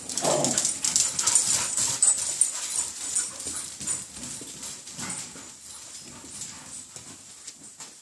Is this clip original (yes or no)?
yes